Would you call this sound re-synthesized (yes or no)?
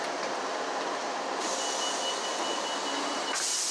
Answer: no